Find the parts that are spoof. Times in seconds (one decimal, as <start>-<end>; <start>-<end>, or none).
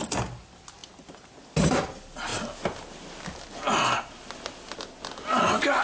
none